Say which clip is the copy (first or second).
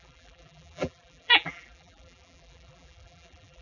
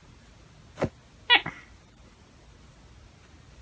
first